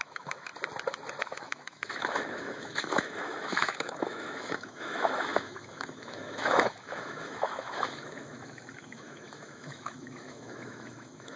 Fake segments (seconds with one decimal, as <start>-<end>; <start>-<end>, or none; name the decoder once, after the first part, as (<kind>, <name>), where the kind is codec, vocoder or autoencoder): 0.0-0.5 (autoencoder, DAC-VAE); 1.2-11.4